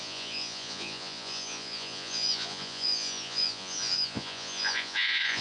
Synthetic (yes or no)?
yes